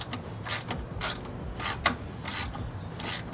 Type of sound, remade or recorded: recorded